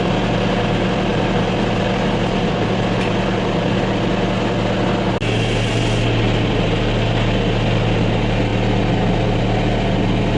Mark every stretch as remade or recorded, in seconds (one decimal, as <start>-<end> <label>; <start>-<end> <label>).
0.0-10.4 recorded

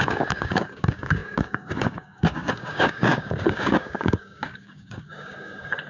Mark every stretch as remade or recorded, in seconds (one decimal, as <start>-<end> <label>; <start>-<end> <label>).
0.0-5.9 remade

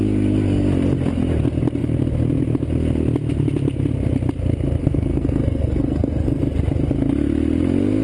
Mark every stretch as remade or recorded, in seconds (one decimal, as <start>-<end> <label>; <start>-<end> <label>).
0.0-4.8 recorded; 4.8-6.4 remade; 6.4-8.0 recorded